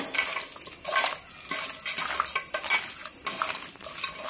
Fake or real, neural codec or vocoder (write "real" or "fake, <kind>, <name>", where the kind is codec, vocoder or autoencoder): real